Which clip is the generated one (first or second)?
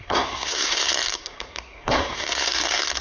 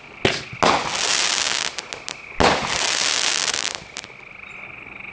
first